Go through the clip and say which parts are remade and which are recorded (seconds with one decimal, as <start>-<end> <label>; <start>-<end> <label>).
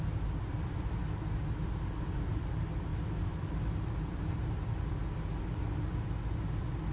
0.0-6.9 recorded